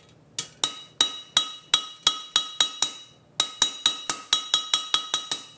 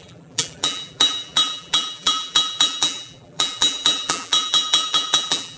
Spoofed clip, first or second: second